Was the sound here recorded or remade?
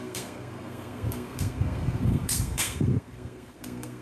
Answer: remade